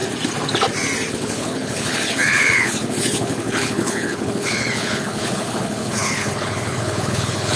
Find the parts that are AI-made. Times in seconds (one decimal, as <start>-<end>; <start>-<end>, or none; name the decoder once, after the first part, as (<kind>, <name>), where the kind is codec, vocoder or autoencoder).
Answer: 1.1-7.6 (codec, HILCodec)